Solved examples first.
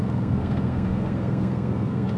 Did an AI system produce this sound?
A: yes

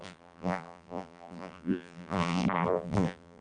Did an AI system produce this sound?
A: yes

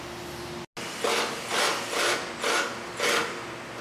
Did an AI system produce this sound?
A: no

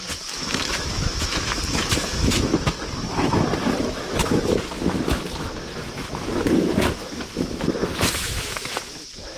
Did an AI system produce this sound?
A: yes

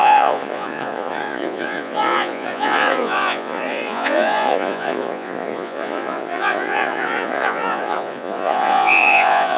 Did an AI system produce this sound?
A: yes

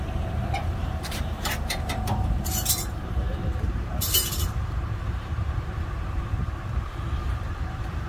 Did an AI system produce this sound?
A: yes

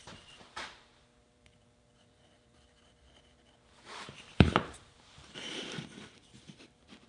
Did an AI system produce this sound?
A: yes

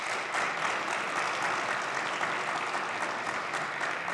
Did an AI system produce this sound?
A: no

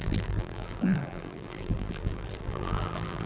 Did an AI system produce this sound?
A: yes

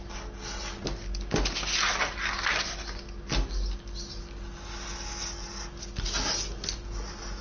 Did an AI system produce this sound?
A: no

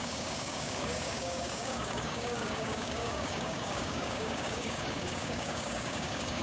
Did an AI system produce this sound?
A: yes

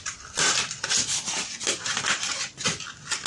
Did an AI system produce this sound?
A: no